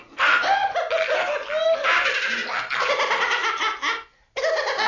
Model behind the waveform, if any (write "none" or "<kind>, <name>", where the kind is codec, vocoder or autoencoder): none